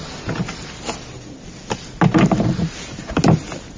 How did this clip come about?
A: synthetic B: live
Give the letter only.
B